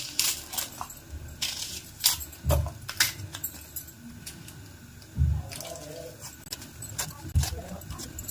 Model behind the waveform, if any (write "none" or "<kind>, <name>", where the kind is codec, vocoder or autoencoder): none